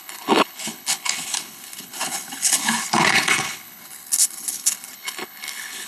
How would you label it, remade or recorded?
remade